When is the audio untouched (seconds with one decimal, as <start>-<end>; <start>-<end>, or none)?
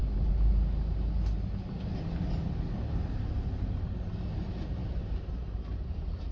0.0-4.8